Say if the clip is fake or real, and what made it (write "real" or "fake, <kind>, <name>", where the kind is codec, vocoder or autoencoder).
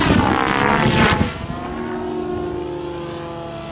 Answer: real